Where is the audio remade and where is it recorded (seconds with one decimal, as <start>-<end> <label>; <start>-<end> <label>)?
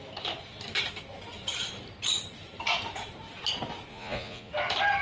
0.0-3.9 recorded; 3.9-4.5 remade; 4.5-5.0 recorded